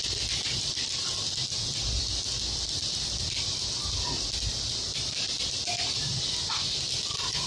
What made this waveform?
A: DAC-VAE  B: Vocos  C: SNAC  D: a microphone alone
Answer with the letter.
D